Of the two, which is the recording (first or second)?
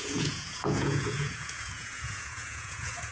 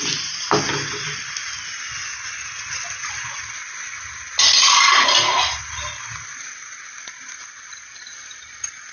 second